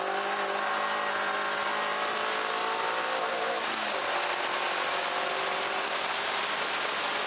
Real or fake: real